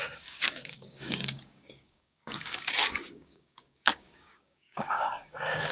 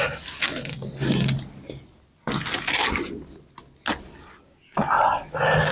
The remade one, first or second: first